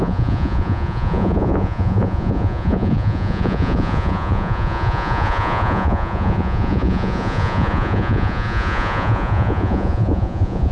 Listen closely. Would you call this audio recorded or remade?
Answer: remade